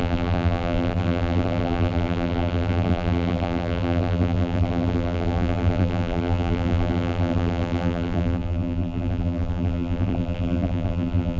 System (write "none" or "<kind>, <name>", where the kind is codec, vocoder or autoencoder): vocoder, BigVGAN v2